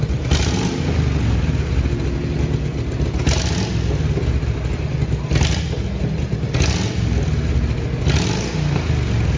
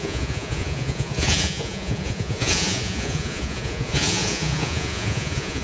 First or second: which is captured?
first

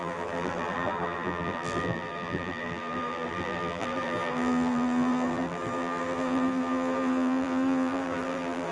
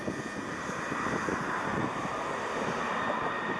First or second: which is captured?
second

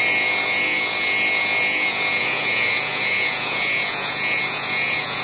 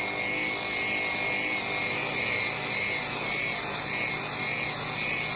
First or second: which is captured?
second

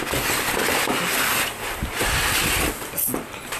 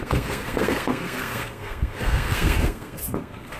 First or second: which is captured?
first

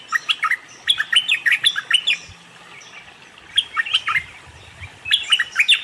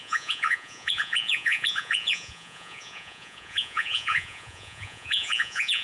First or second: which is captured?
first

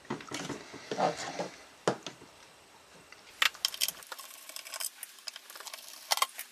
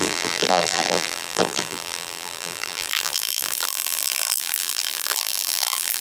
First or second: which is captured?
first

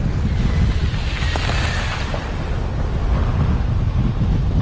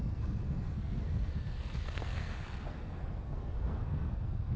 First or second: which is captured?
first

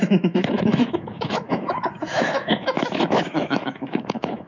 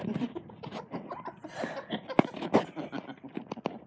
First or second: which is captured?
second